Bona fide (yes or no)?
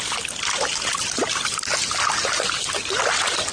yes